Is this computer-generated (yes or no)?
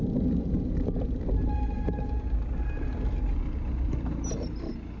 no